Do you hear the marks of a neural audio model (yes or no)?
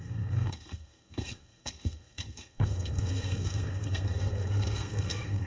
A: yes